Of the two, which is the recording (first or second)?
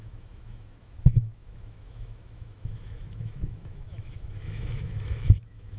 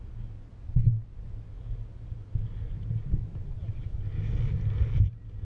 second